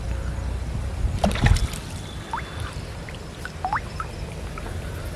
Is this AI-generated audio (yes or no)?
no